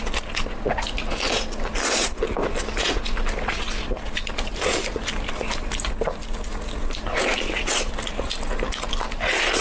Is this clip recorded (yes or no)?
yes